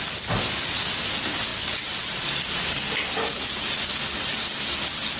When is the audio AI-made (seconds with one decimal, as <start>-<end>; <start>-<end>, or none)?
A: none